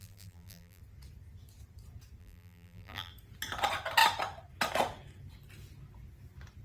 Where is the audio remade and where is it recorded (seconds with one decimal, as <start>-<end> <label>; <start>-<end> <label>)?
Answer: 0.0-0.8 remade; 0.8-2.2 recorded; 2.2-3.1 remade; 3.1-6.6 recorded